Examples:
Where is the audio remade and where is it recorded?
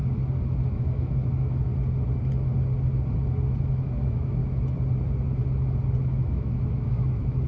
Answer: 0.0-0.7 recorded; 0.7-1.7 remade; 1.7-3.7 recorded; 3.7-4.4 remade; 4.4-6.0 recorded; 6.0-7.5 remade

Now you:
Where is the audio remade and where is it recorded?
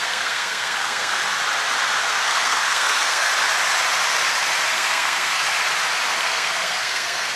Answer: 0.0-1.2 remade; 1.2-2.0 recorded; 2.0-3.3 remade; 3.3-4.7 recorded; 4.7-5.4 remade; 5.4-6.2 recorded; 6.2-7.4 remade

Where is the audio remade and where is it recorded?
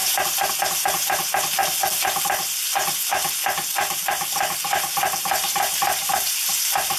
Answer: 0.0-0.5 remade; 0.5-7.0 recorded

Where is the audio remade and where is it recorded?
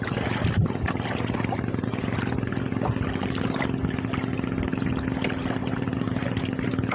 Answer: 0.0-5.6 recorded; 5.6-6.4 remade; 6.4-6.9 recorded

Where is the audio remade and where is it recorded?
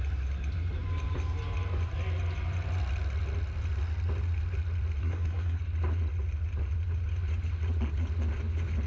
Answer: 0.0-5.0 recorded; 5.0-5.6 remade; 5.6-8.9 recorded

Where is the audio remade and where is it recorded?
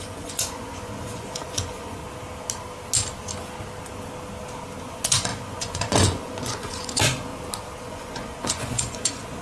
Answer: 0.0-2.0 remade; 2.0-4.8 recorded; 4.8-7.3 remade; 7.3-7.8 recorded; 7.8-9.4 remade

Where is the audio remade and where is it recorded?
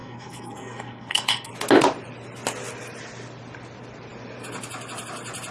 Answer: 0.0-1.5 remade; 1.5-5.5 recorded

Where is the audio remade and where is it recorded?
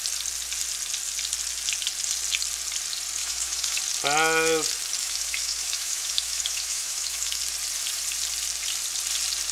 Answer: 0.0-3.2 recorded; 3.2-3.8 remade; 3.8-5.0 recorded; 5.0-7.4 remade; 7.4-9.5 recorded